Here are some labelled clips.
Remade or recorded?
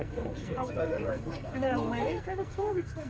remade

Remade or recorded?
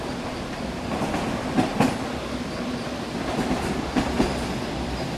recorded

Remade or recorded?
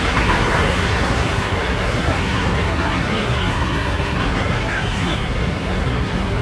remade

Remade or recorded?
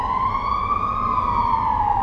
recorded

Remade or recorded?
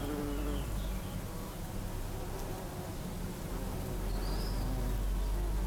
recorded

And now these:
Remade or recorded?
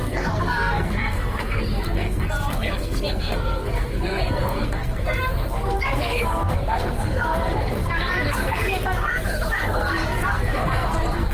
remade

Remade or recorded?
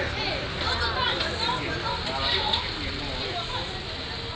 recorded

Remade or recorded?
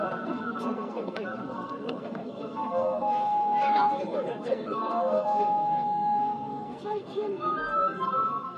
remade